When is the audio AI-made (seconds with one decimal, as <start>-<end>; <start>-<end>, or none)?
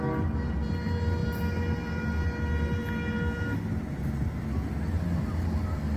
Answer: none